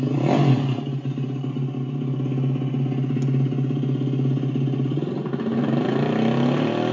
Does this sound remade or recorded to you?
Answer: recorded